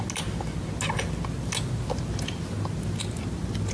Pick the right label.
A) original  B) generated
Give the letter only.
A